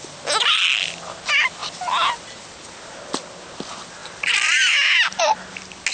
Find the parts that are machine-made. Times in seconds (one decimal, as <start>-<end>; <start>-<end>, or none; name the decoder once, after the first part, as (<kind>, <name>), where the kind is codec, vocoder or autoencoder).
4.0-5.2 (vocoder, BigVGAN v2)